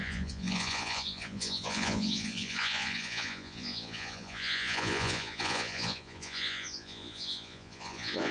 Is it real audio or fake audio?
fake